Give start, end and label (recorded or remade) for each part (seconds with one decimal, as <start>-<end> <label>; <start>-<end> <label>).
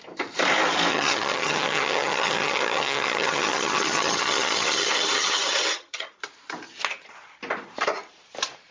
0.0-0.9 recorded; 0.9-6.1 remade; 6.1-8.7 recorded